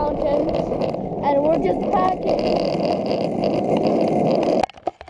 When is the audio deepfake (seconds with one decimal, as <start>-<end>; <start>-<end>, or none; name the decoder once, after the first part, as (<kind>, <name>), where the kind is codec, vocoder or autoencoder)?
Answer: none